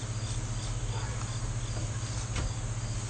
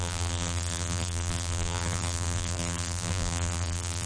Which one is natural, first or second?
first